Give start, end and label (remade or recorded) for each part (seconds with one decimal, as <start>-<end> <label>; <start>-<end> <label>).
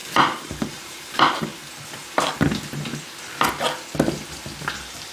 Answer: 0.0-1.5 remade; 1.5-4.6 recorded; 4.6-5.1 remade